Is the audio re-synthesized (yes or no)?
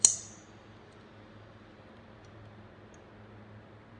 no